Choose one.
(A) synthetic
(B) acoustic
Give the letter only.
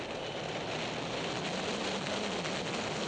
B